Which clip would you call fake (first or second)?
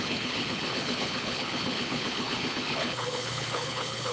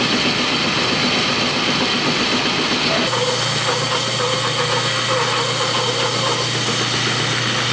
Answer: first